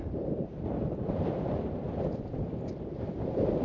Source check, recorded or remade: remade